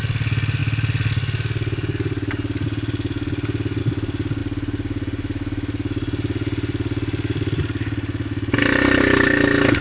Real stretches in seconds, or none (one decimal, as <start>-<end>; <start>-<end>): 0.0-9.8